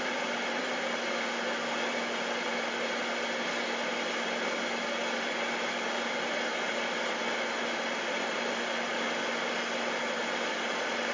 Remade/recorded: recorded